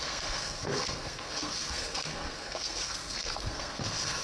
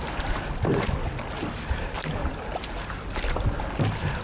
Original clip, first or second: second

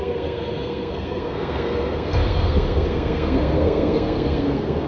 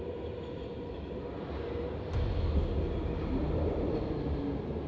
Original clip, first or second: second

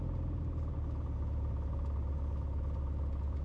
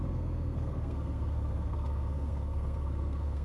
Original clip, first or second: first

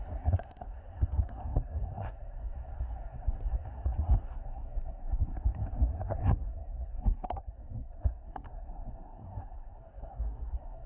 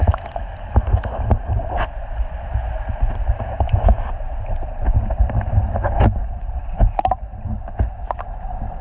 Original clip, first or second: second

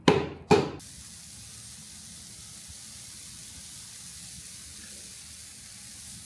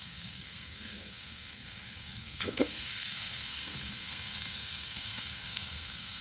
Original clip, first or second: first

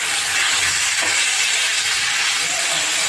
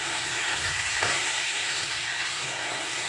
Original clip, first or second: first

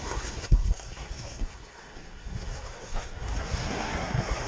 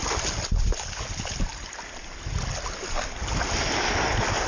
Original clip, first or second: second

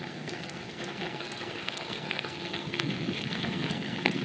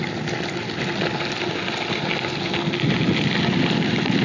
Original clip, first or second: second